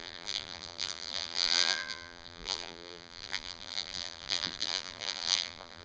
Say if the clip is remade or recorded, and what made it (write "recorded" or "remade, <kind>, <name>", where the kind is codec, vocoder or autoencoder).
remade, vocoder, BigVGAN v2